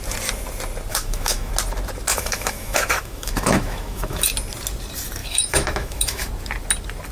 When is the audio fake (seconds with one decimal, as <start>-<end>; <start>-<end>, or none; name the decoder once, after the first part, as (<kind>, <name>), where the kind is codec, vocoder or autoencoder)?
0.9-1.5 (autoencoder, DAC-VAE); 2.1-4.3; 5.2-6.3

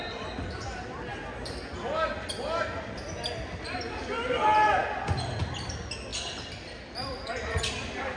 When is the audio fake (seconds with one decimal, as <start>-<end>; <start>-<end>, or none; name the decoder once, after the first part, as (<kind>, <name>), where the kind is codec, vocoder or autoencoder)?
6.1-8.2 (vocoder, BigVGAN v2)

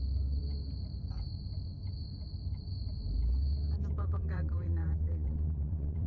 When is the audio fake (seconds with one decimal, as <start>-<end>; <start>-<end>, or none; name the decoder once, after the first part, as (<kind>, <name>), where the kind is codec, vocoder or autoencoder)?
4.0-6.1 (vocoder, WaveNeXt)

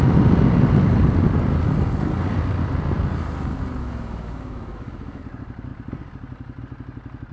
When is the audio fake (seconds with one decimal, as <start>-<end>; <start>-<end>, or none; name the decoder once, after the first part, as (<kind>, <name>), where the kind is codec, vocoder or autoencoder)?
3.8-5.2 (autoencoder, DAC-VAE)

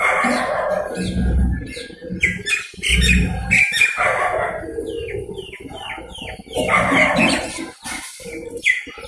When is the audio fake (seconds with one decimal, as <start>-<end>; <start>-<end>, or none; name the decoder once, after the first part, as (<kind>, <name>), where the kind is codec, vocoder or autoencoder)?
none

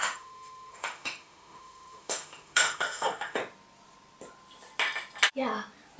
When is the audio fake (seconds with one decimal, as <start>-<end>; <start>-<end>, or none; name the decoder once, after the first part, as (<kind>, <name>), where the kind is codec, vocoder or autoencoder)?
0.0-3.4 (autoencoder, DAC-VAE)

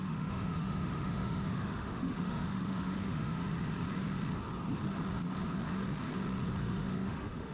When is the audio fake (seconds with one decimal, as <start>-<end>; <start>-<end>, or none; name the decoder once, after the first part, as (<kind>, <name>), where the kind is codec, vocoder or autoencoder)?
0.0-3.4 (autoencoder, DAC-VAE); 6.6-7.5

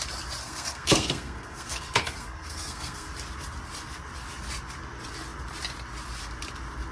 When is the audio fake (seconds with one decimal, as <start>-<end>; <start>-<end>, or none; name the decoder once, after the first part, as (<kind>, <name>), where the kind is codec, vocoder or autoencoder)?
0.4-3.1 (codec, SNAC)